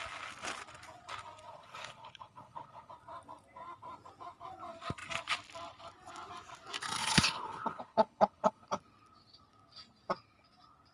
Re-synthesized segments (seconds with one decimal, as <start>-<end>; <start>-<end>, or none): 1.5-2.9; 7.0-8.8

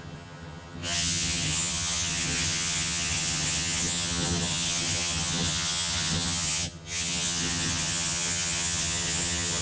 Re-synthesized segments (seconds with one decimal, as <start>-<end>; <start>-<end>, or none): 0.0-9.6

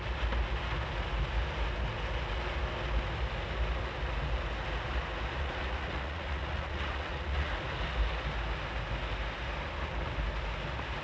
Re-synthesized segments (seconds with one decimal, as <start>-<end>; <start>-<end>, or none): 5.4-7.5

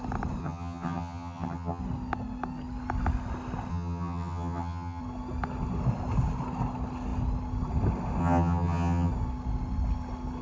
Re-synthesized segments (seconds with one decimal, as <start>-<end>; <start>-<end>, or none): 0.4-1.8; 3.7-5.0; 8.2-9.1

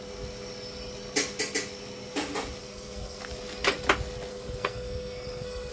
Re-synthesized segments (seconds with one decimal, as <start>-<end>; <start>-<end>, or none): 2.6-3.2; 4.3-5.7

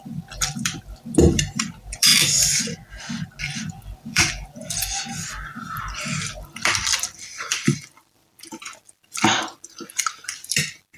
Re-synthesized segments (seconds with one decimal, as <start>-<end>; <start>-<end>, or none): 0.0-2.1; 3.4-11.0

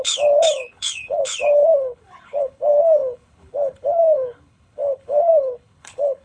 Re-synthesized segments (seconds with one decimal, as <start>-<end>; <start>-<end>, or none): 0.0-6.2

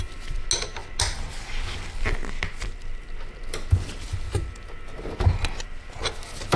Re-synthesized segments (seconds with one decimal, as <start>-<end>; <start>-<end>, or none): none